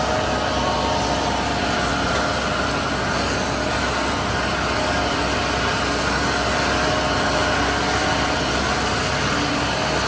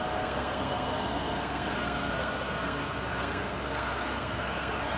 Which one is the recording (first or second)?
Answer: first